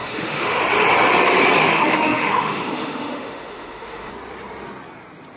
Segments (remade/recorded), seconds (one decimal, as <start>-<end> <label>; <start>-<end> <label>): 0.0-0.6 remade; 0.6-1.6 recorded; 1.6-4.1 remade; 4.1-5.4 recorded